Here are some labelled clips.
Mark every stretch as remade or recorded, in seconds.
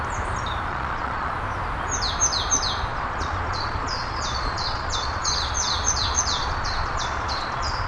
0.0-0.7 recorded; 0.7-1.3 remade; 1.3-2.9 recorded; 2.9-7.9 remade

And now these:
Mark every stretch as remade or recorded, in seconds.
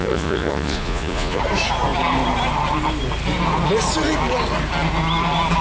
0.0-1.4 remade; 1.4-5.6 recorded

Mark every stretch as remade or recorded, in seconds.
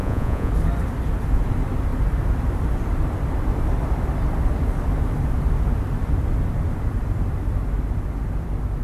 0.0-0.5 remade; 0.5-8.8 recorded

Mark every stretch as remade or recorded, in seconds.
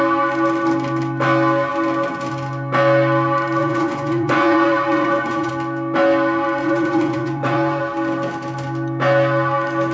0.0-3.6 recorded; 3.6-5.5 remade; 5.5-6.6 recorded; 6.6-7.8 remade; 7.8-9.9 recorded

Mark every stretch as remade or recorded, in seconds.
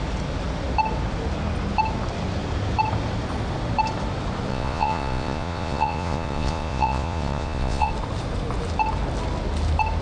0.0-4.5 recorded; 4.5-7.9 remade; 7.9-10.0 recorded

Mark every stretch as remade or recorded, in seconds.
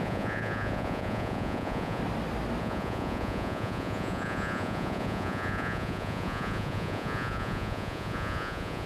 0.0-2.0 remade; 2.0-2.6 recorded; 2.6-8.9 remade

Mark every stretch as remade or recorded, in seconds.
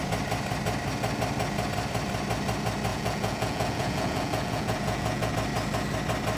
0.0-2.9 recorded; 2.9-5.3 remade; 5.3-6.4 recorded